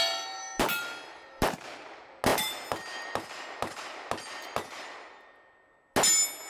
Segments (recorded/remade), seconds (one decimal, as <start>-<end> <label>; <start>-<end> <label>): 0.0-6.5 recorded